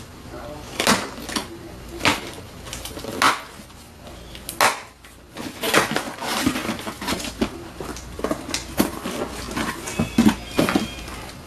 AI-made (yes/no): no